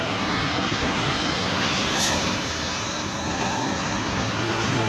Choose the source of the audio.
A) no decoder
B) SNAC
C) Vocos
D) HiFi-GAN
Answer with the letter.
B